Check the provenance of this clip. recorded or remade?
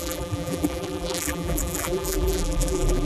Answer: remade